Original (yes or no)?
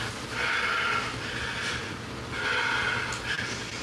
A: yes